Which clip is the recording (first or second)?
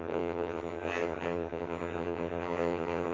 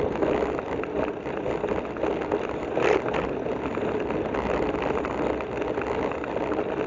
second